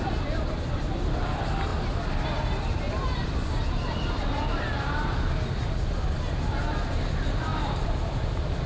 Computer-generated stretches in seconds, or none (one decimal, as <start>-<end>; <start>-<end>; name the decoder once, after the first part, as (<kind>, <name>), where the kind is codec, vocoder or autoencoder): none